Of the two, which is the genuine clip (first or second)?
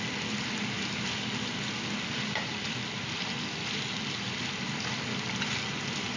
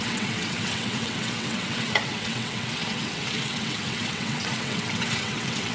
first